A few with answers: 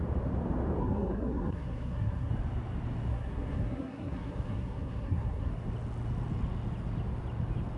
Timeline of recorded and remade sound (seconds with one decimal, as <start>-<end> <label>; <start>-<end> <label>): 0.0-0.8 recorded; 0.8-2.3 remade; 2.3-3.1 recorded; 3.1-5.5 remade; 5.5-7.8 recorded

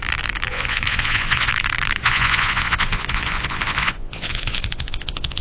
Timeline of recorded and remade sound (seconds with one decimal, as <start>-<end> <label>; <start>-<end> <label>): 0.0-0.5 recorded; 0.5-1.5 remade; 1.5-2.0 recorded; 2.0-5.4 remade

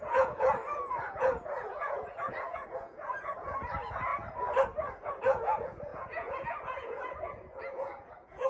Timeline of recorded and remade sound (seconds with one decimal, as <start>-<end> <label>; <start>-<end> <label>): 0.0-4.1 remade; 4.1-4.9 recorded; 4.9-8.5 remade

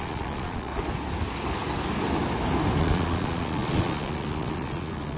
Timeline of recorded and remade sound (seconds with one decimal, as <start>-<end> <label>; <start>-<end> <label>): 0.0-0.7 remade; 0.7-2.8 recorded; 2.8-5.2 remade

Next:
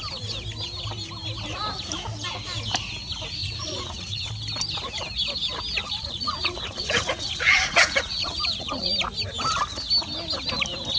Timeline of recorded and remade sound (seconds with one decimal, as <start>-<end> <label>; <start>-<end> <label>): 0.0-3.4 recorded; 3.4-4.3 remade; 4.3-5.8 recorded; 5.8-8.9 remade; 8.9-11.0 recorded